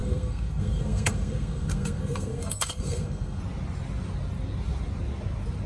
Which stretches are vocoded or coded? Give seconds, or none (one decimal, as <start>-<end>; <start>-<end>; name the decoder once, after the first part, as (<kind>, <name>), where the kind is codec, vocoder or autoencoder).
0.0-3.4 (codec, SNAC)